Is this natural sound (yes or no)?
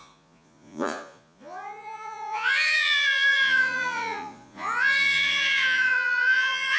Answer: no